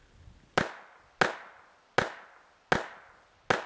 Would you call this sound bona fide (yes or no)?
yes